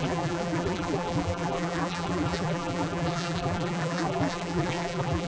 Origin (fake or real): fake